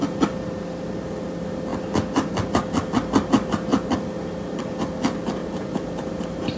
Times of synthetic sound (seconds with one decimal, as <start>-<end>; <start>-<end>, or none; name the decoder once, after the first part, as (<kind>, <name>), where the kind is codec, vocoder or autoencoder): 5.4-6.6 (vocoder, BigVGAN v2)